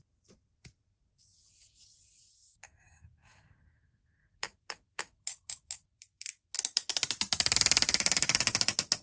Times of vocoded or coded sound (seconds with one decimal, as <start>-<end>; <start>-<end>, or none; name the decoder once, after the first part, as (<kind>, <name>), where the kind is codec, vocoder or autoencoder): 2.3-6.9 (autoencoder, DAC-VAE)